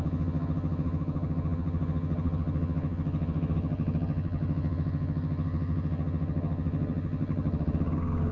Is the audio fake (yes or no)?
yes